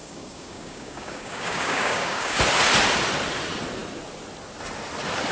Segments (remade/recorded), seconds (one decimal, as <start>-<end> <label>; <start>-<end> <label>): 0.0-2.4 remade; 2.4-5.3 recorded